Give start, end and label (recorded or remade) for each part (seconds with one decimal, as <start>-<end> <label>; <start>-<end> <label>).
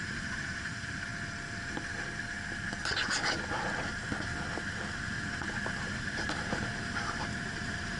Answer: 0.0-1.1 remade; 1.1-5.9 recorded; 5.9-8.0 remade